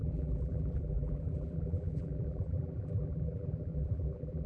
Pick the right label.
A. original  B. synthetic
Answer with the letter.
B